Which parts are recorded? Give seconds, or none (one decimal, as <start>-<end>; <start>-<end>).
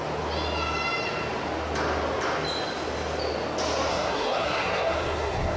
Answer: 0.0-3.9